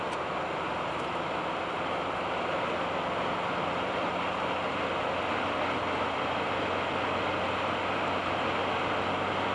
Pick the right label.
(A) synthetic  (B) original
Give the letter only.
B